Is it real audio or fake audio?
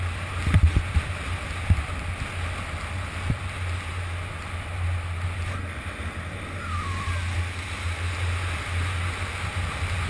real